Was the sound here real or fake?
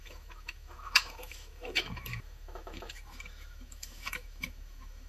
fake